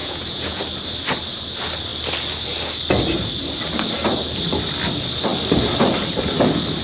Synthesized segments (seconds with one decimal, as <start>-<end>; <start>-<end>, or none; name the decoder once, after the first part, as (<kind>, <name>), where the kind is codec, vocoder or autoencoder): 0.0-0.6 (vocoder, Vocos)